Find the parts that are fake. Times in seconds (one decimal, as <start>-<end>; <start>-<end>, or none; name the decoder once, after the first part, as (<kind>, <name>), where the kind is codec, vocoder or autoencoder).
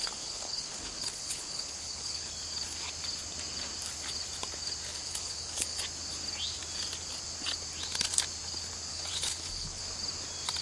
0.0-2.3 (codec, HILCodec); 4.9-5.8; 8.9-9.8